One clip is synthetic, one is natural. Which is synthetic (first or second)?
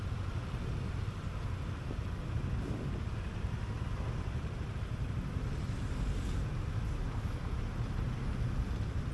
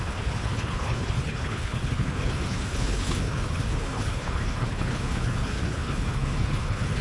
second